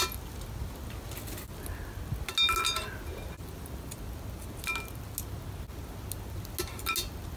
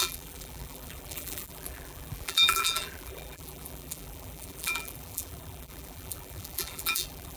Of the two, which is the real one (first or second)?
first